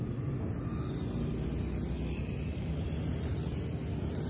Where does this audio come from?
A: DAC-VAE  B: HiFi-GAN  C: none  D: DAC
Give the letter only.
C